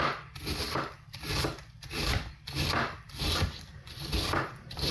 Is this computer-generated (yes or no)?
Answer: yes